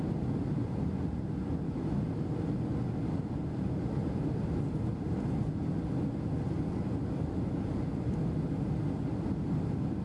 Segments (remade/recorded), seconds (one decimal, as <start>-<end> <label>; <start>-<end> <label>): 0.0-10.0 recorded